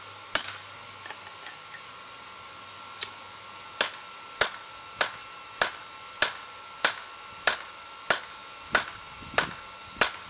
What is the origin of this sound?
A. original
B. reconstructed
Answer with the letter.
A